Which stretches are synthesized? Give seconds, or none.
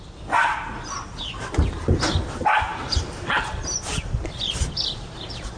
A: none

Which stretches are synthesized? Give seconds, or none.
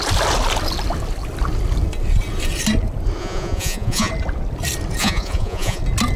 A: 3.2-4.1 (vocoder, Vocos); 5.0-5.8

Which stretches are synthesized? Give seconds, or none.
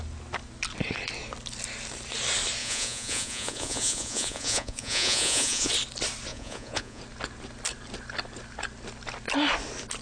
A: 2.6-5.7 (vocoder, Vocos); 6.3-7.0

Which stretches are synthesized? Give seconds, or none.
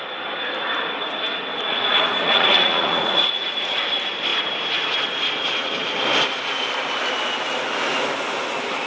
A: 1.5-3.9 (vocoder, Vocos)